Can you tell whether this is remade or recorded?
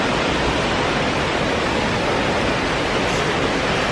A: recorded